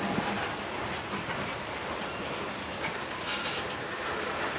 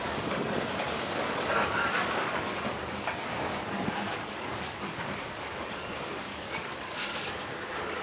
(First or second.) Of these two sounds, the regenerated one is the second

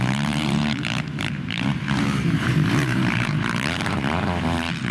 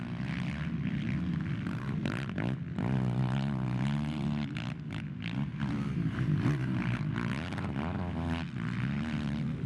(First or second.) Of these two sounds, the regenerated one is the first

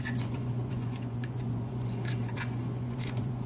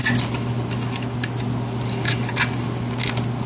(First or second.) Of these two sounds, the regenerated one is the first